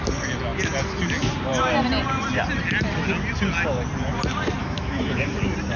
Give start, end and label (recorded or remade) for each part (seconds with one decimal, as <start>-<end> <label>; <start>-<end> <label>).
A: 0.0-4.6 recorded; 4.6-5.3 remade; 5.3-5.8 recorded